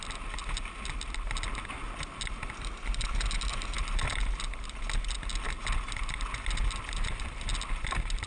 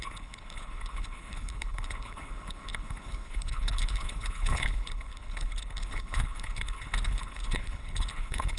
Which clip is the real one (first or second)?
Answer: first